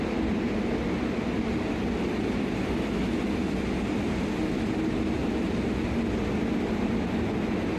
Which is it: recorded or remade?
recorded